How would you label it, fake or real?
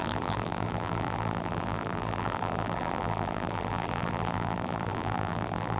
fake